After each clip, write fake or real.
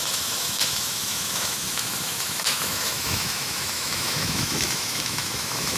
fake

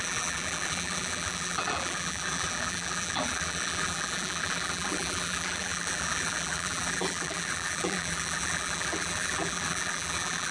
fake